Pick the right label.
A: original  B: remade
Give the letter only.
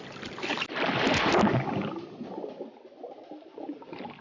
A